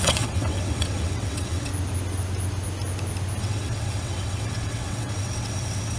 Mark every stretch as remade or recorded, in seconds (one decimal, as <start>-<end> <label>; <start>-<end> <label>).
0.0-1.7 remade; 1.7-3.4 recorded; 3.4-6.0 remade